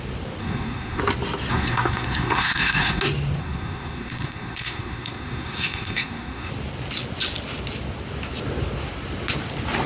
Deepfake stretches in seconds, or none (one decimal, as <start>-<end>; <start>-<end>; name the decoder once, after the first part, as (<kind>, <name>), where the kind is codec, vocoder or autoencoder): 0.4-1.0 (codec, SNAC); 1.5-3.0; 3.4-6.5

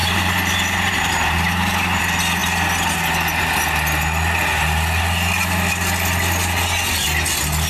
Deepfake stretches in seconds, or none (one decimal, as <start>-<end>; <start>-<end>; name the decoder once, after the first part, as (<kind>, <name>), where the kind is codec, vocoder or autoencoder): 0.0-2.0 (vocoder, BigVGAN v2)

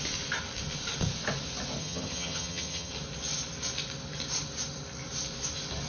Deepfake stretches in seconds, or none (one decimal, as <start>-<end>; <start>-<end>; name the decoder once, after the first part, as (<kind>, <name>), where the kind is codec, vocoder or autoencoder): 1.8-2.9 (vocoder, HiFi-GAN)

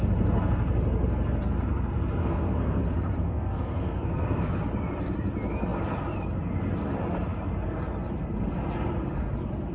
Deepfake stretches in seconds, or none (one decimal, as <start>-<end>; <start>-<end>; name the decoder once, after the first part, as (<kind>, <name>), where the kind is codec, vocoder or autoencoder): 2.2-2.8 (codec, SNAC); 3.2-4.5

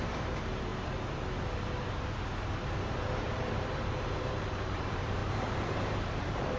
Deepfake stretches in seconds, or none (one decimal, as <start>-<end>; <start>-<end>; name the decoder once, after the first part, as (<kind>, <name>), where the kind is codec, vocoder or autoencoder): 0.0-0.7 (vocoder, BigVGAN v2); 3.2-6.6

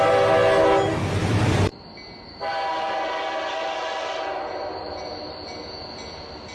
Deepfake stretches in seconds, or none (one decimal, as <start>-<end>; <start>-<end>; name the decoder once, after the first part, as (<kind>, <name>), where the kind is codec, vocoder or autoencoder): none